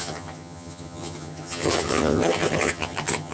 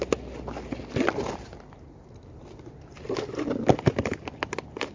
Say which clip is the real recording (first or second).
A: second